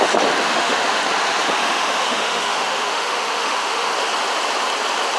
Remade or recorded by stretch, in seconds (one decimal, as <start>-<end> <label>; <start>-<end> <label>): 0.0-0.4 recorded; 0.4-1.0 remade; 1.0-1.6 recorded; 1.6-3.9 remade; 3.9-5.2 recorded